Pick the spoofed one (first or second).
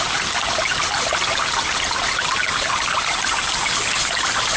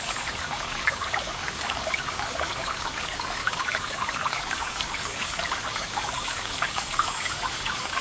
second